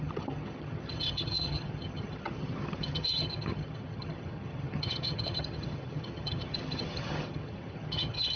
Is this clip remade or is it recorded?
remade